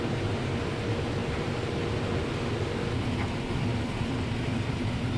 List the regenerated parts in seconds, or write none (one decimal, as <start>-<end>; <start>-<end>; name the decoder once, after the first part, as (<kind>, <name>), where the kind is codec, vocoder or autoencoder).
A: none